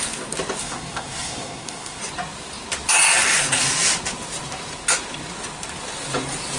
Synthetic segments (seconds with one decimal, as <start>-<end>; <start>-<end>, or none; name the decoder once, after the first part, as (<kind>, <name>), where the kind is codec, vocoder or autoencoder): 0.6-2.0 (codec, SNAC)